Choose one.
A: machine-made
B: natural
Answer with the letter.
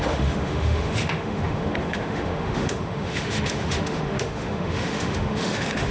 A